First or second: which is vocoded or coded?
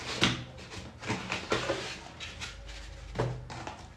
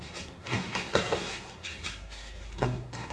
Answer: second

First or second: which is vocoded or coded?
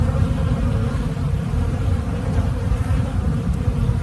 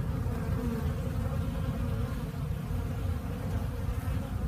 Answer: first